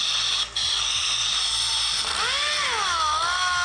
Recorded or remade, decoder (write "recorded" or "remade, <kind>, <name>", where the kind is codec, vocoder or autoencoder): recorded